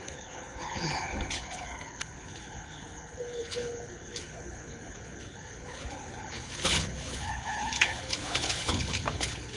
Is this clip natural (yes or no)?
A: no